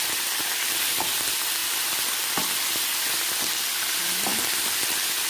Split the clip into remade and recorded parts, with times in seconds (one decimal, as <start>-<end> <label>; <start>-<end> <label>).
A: 0.0-1.6 recorded; 1.6-3.0 remade; 3.0-4.3 recorded; 4.3-5.3 remade